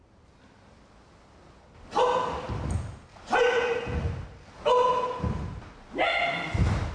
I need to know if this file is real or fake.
real